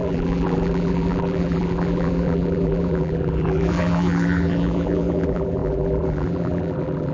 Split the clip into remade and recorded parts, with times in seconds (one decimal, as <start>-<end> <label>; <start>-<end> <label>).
0.0-7.1 remade